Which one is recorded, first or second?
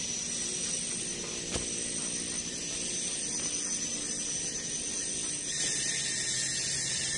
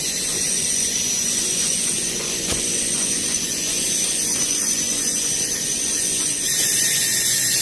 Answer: first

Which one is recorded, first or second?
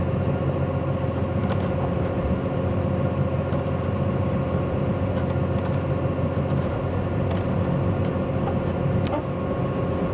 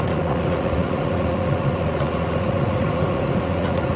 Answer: first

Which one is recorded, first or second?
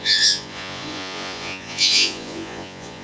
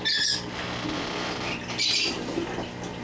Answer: second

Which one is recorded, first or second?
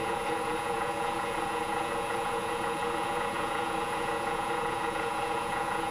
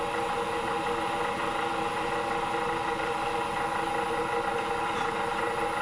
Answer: second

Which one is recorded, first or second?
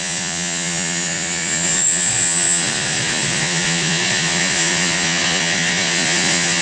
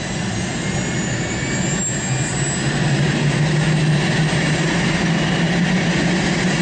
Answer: second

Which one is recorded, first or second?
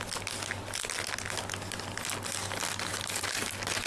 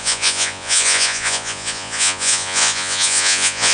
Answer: first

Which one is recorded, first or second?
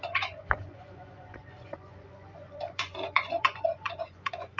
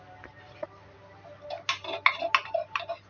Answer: second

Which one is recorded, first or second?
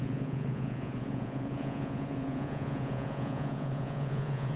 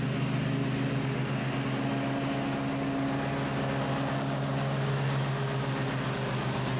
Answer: second